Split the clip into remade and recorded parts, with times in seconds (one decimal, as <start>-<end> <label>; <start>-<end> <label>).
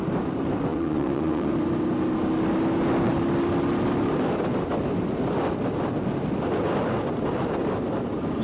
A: 0.0-0.7 recorded; 0.7-1.5 remade; 1.5-8.4 recorded